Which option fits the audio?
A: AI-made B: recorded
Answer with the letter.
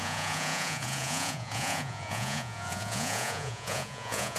A